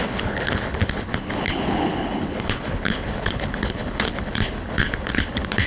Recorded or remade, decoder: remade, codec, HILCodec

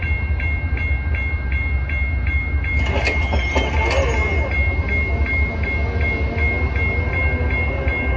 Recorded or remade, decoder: recorded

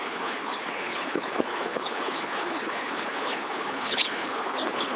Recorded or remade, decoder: remade, codec, HILCodec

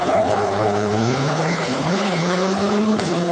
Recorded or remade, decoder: remade, codec, HILCodec